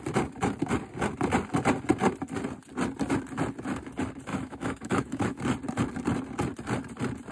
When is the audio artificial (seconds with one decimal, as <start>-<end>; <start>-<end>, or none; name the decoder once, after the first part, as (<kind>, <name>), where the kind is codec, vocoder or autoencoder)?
4.3-5.4 (autoencoder, DAC-VAE)

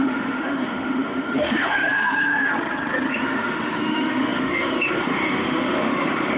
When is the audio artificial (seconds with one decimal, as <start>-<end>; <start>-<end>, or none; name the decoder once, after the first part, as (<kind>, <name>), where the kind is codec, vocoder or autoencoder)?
0.0-2.5 (autoencoder, DAC-VAE); 3.1-6.4

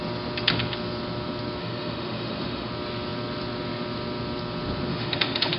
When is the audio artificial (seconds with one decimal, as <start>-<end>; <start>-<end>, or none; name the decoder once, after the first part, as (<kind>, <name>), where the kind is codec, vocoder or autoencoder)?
1.6-2.7 (autoencoder, DAC-VAE); 4.9-5.6

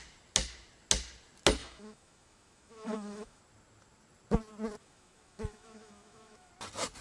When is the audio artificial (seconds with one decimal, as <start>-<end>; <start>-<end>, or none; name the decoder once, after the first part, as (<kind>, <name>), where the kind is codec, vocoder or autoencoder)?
1.6-3.4 (autoencoder, DAC-VAE); 4.8-6.5